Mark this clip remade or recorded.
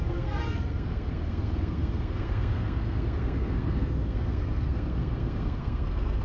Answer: remade